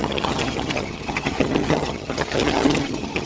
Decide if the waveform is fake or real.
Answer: fake